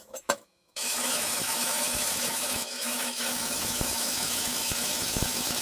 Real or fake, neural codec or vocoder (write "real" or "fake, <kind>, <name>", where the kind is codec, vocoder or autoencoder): fake, autoencoder, DAC-VAE